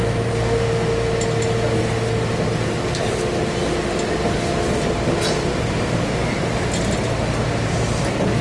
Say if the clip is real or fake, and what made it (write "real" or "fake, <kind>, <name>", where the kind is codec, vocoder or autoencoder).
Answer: real